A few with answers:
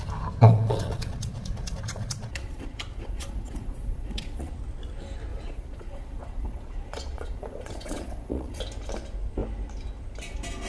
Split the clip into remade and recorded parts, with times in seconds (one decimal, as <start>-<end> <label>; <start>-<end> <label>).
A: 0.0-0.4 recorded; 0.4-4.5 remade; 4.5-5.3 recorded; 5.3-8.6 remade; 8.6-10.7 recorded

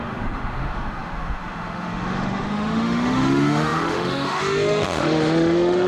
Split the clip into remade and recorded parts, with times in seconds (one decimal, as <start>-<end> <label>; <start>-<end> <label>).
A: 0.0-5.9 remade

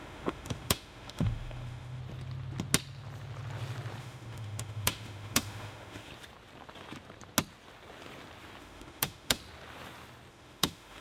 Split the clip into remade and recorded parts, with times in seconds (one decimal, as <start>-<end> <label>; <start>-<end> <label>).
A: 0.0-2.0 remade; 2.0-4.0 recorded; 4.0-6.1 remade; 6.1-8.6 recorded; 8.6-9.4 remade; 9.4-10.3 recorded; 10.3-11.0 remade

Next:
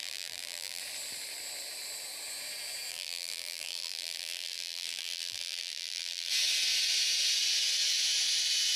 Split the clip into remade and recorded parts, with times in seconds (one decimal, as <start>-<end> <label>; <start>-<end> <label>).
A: 0.0-0.8 remade; 0.8-2.9 recorded; 2.9-6.3 remade; 6.3-8.8 recorded

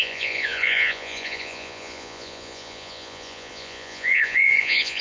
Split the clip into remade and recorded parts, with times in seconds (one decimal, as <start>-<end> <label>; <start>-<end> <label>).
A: 0.0-5.0 remade

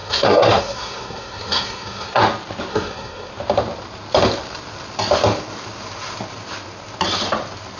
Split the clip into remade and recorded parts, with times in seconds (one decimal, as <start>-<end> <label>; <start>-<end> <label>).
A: 0.0-2.2 remade; 2.2-2.7 recorded; 2.7-3.3 remade; 3.3-7.8 recorded

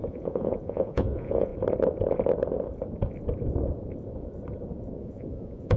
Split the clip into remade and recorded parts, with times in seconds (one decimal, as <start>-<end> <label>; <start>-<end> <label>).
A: 0.0-1.5 remade; 1.5-5.0 recorded; 5.0-5.8 remade